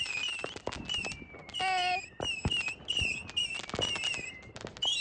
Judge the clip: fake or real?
real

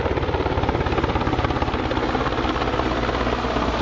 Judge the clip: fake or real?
real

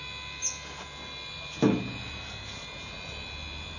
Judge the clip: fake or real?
real